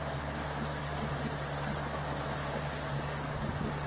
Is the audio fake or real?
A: real